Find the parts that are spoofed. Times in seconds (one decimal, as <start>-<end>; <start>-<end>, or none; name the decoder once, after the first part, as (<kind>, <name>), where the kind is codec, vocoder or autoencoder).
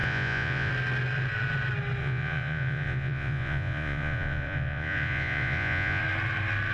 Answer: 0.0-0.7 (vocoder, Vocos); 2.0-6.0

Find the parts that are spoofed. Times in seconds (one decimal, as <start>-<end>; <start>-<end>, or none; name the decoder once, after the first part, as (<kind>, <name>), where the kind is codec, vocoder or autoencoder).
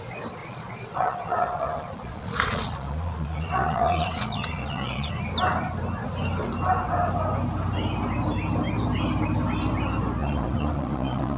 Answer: 0.4-5.1 (vocoder, Vocos); 10.2-11.4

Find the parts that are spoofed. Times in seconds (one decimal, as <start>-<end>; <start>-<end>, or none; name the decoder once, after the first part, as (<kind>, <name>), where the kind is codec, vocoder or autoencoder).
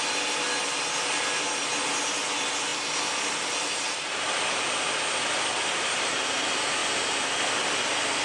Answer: none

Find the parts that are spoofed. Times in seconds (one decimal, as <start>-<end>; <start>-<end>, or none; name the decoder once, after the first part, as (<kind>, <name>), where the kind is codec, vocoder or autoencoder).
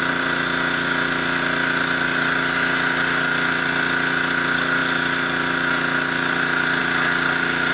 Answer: none